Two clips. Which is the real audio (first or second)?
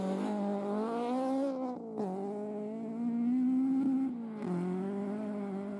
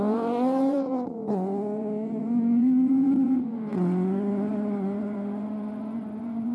first